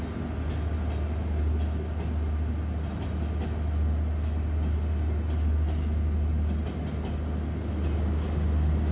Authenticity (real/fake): real